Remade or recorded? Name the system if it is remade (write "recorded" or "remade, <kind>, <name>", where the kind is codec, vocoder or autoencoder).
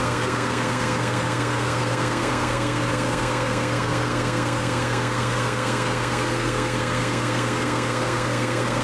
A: remade, codec, SNAC